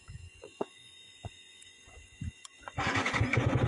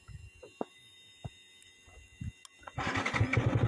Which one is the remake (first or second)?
first